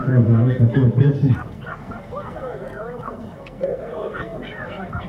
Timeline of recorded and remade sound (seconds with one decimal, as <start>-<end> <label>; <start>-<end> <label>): 0.0-5.1 remade